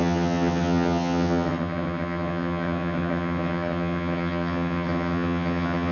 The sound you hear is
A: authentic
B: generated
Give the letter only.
B